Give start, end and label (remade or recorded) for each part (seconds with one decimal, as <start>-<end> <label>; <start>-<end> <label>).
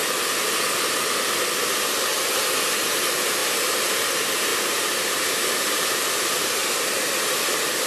0.0-3.4 recorded; 3.4-3.9 remade; 3.9-4.5 recorded; 4.5-5.9 remade; 5.9-7.9 recorded